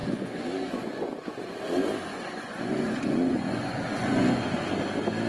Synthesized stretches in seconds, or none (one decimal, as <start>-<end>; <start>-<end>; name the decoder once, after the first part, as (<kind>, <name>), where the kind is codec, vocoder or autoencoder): 0.0-1.6 (vocoder, Vocos); 2.1-4.7